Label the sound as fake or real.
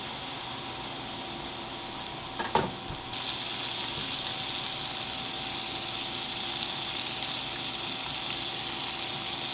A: real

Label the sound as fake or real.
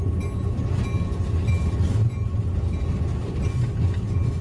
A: real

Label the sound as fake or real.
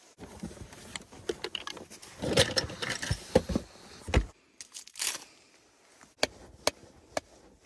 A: real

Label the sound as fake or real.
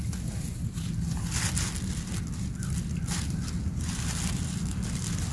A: real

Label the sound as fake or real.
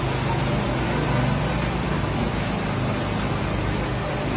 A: real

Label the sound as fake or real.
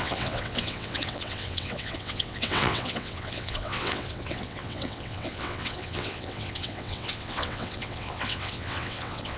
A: fake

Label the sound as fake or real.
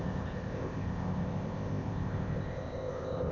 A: fake